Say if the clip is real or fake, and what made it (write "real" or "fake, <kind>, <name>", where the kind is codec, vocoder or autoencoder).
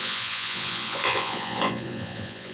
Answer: fake, vocoder, Vocos